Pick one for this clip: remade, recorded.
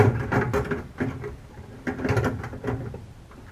recorded